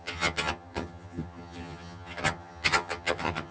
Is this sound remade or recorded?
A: remade